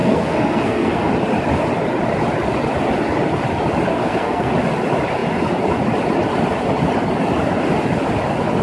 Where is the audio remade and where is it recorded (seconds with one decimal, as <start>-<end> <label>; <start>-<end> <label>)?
0.0-1.1 remade; 1.1-3.9 recorded; 3.9-4.5 remade; 4.5-8.6 recorded